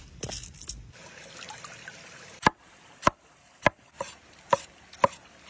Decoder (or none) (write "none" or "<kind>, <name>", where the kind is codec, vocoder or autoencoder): none